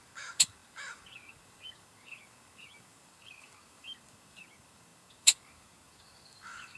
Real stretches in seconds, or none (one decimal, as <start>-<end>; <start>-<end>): none